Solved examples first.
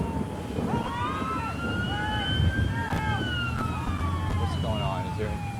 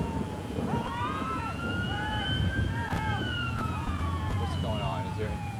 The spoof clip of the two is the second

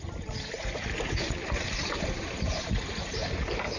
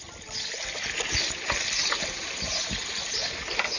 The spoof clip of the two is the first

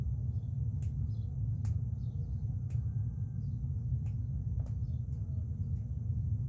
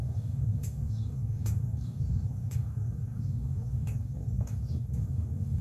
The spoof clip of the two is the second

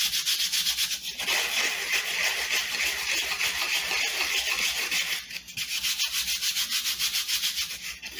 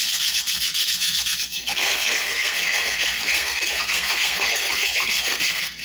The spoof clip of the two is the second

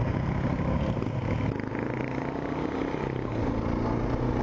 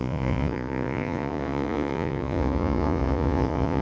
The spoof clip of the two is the second